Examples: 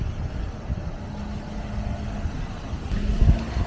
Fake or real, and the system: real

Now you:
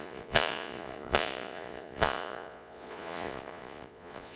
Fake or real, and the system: fake, vocoder, Vocos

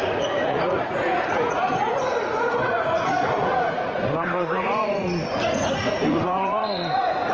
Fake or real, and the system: fake, vocoder, Vocos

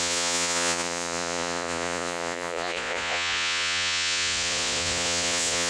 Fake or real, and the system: fake, vocoder, Vocos